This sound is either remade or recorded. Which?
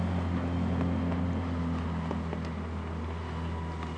recorded